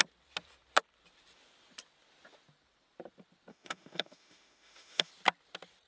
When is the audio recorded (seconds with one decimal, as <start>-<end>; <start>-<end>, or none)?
0.0-3.5; 5.1-5.9